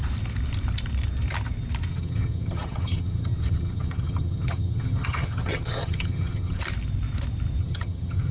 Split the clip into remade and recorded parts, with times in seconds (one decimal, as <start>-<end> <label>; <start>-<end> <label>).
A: 0.0-1.9 recorded; 1.9-6.6 remade; 6.6-7.6 recorded; 7.6-8.3 remade